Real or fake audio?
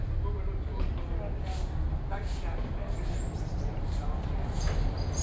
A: real